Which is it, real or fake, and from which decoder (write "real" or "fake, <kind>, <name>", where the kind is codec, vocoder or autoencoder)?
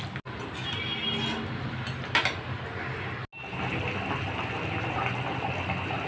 real